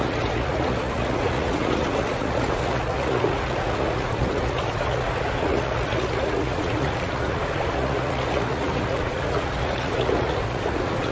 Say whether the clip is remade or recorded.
remade